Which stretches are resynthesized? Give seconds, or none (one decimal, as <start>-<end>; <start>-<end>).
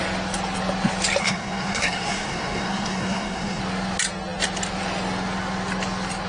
1.2-3.6